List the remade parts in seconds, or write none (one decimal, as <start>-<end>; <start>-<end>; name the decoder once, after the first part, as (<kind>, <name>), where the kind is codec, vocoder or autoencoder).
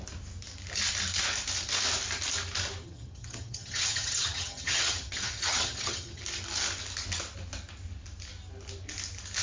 2.8-6.2 (vocoder, HiFi-GAN)